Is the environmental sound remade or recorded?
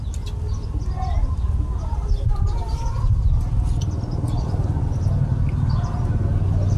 recorded